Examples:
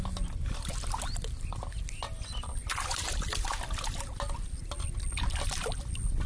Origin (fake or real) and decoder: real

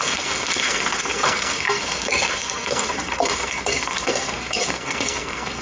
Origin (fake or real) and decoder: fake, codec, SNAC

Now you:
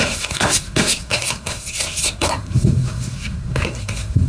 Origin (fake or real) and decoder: fake, codec, SNAC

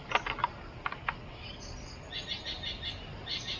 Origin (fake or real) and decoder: real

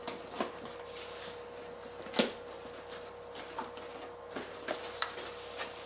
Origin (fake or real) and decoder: real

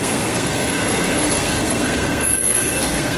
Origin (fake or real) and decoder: fake, codec, SNAC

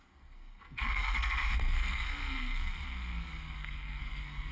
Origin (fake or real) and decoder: fake, codec, SNAC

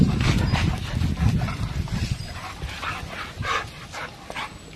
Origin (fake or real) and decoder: real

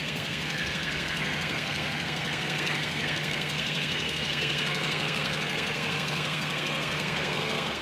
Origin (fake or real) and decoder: fake, codec, SNAC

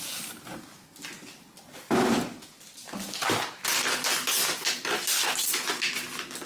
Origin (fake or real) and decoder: real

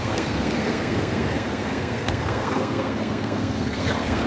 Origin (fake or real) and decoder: fake, codec, SNAC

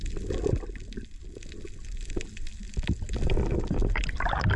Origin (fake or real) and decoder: real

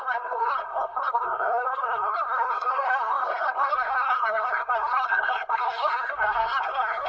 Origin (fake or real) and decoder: fake, codec, SNAC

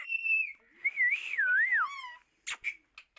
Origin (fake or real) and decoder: real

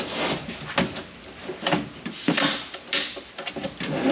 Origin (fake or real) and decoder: real